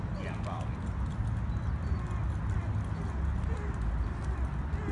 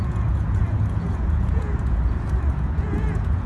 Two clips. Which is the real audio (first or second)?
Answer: first